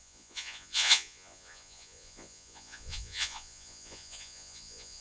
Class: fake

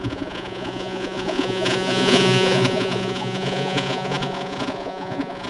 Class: fake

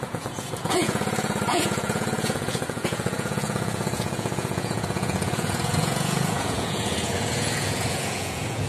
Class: fake